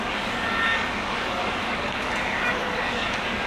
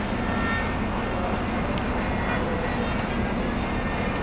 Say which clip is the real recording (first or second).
second